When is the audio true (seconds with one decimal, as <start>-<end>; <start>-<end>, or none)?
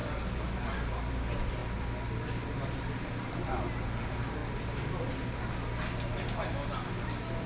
0.0-7.5